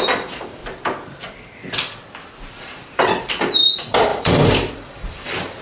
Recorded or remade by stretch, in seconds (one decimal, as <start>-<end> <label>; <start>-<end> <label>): 0.0-0.6 remade; 0.6-2.6 recorded; 2.6-5.6 remade